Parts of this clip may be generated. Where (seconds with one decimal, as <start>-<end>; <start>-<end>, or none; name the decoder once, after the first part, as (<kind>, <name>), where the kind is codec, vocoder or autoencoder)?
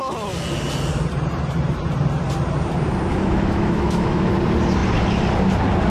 3.1-4.3 (autoencoder, DAC-VAE)